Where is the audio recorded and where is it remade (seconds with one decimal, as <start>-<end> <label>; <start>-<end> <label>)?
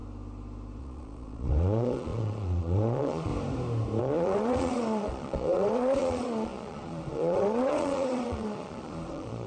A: 0.0-0.8 recorded; 0.8-3.3 remade; 3.3-4.0 recorded; 4.0-9.5 remade